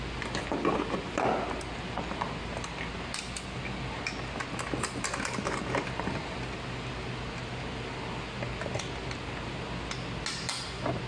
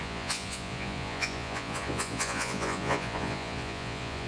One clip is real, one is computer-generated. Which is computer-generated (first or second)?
second